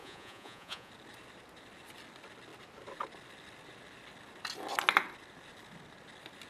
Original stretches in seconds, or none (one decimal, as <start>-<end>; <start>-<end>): 0.9-6.5